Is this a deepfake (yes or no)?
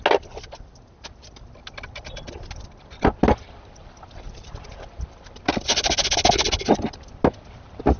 no